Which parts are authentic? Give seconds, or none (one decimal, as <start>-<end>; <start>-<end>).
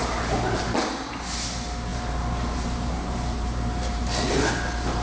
0.0-1.9; 4.4-5.0